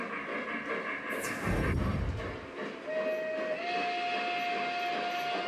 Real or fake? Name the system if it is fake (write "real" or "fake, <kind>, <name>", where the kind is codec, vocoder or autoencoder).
real